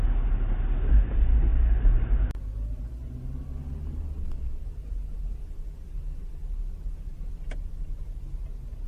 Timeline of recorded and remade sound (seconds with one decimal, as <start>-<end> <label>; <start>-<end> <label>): 0.0-8.9 recorded